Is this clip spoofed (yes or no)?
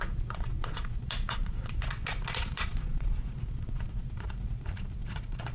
yes